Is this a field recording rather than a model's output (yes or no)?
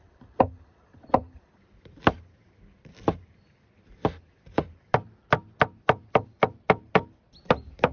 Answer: no